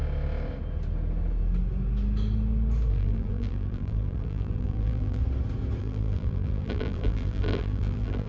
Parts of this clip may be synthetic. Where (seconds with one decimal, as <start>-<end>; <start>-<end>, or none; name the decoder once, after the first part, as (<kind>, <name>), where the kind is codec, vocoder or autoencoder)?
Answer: 2.9-5.2 (vocoder, BigVGAN v2); 5.8-8.3